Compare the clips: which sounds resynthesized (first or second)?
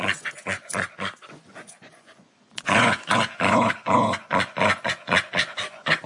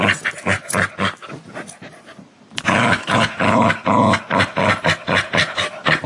first